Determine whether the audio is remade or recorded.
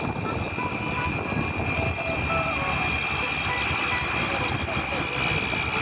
recorded